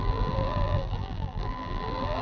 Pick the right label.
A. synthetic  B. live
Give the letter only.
A